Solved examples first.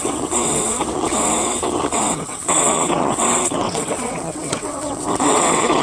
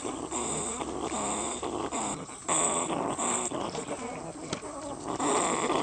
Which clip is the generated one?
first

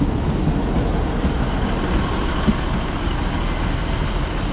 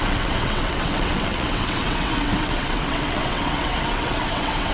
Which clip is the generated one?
second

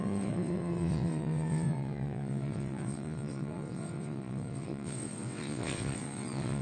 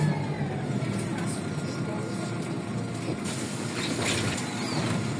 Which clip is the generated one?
first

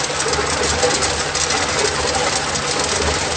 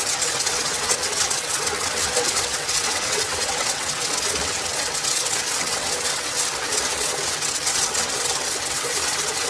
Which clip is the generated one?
second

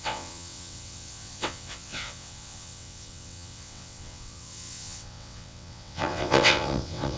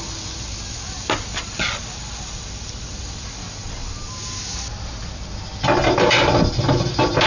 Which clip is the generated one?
first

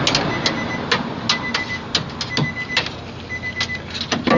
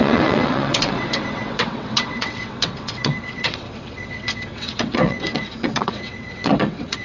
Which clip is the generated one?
second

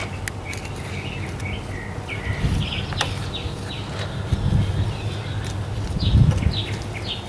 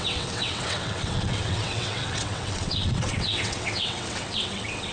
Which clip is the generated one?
second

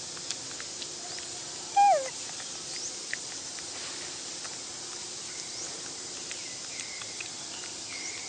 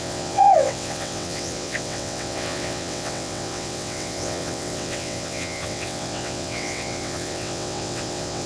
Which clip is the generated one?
second